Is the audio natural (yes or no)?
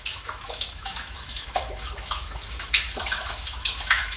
no